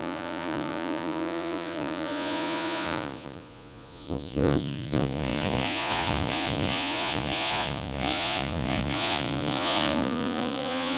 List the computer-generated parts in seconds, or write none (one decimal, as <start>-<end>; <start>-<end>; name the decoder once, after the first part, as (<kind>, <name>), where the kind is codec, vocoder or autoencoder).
0.0-11.0 (vocoder, Vocos)